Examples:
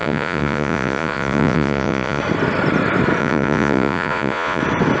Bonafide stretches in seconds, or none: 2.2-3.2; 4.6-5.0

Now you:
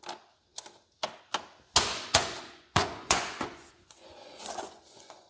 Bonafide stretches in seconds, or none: 0.0-1.9

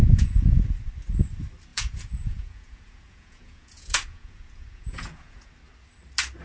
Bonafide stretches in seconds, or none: 0.6-1.7; 5.5-6.4